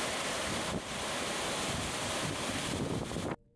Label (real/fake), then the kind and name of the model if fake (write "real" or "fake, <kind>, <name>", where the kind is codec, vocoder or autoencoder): real